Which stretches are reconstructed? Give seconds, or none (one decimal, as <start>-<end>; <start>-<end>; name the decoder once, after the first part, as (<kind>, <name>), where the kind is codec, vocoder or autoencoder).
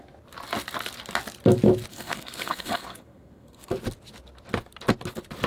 1.9-3.7 (codec, SNAC)